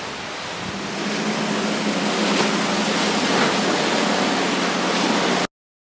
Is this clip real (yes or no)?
yes